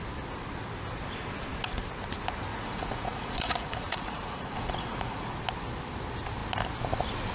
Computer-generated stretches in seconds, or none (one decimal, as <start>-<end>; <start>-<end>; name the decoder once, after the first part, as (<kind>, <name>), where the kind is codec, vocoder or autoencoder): 2.5-5.3 (vocoder, Vocos)